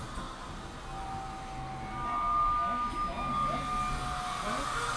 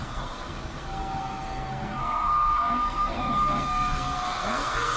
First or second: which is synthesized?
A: second